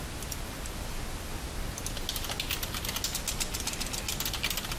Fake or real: real